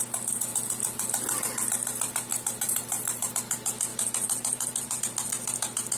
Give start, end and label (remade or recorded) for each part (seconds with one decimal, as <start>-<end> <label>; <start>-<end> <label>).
0.0-2.3 recorded; 2.3-3.3 remade; 3.3-3.9 recorded; 3.9-5.0 remade; 5.0-6.0 recorded